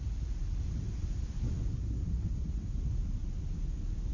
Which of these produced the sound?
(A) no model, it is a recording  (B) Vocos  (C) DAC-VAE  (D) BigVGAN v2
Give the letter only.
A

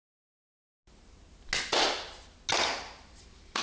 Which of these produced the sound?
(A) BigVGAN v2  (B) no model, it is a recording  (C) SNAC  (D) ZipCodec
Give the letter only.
B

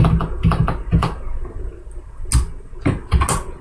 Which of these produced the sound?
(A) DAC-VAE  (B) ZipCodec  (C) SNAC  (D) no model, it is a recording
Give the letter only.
D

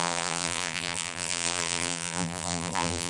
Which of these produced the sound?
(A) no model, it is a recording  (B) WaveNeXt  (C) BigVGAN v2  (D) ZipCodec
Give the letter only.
C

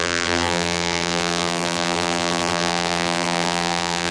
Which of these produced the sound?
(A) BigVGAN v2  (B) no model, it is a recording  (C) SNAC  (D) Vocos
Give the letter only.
A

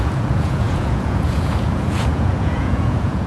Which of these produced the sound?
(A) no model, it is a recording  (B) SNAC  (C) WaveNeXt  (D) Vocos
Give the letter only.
D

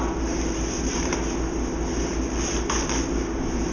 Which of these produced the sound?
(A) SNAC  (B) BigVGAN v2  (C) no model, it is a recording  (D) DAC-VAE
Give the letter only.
C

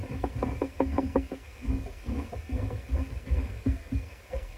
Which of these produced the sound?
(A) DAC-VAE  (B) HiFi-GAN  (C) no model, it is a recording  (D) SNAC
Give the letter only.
D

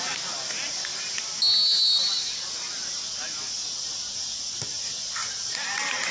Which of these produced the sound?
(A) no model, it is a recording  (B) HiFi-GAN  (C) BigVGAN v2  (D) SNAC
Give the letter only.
A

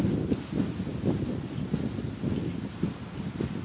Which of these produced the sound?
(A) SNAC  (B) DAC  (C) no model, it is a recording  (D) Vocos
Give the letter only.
C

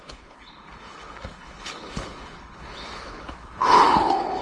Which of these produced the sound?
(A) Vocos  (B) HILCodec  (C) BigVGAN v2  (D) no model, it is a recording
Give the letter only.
B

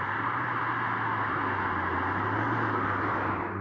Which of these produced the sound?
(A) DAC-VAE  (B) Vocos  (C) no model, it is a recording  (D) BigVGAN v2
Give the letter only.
C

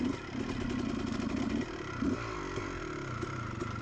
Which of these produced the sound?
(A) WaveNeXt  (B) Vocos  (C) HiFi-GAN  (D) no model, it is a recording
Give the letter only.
D